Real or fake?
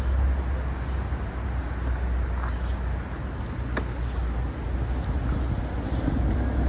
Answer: real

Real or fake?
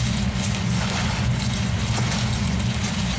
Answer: fake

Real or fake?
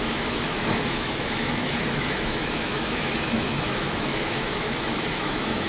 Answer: fake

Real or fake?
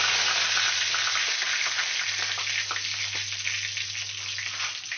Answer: real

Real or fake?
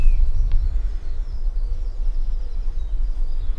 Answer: real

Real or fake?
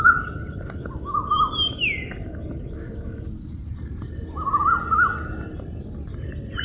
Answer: real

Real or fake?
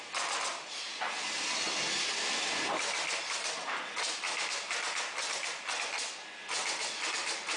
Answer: real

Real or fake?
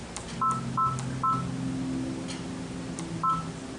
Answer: real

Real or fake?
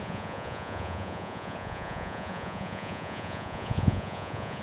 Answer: fake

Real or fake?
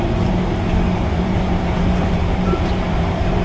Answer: fake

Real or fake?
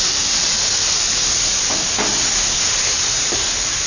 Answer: real